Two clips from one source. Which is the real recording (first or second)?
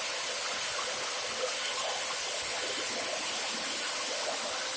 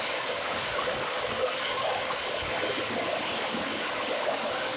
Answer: first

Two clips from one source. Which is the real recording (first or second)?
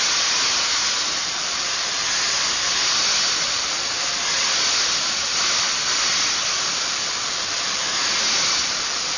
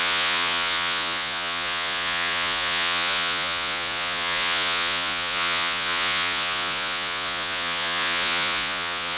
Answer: first